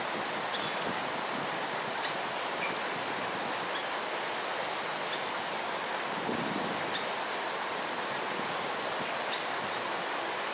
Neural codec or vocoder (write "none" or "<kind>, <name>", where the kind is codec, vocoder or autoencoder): none